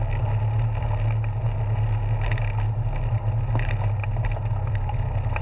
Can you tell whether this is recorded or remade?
recorded